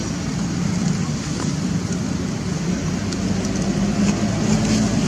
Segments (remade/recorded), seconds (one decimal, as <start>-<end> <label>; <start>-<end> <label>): 0.0-5.1 recorded